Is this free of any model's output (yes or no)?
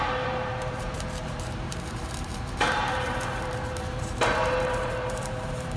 no